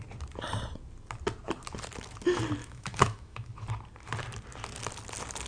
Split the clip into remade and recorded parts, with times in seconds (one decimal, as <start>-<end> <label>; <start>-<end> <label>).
0.0-2.6 recorded; 2.6-3.5 remade; 3.5-5.5 recorded